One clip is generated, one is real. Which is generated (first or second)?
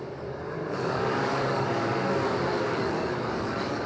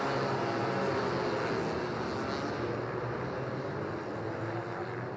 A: first